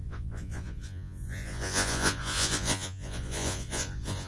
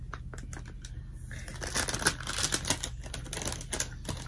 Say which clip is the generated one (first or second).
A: first